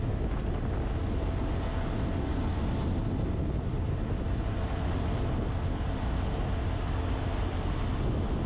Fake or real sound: real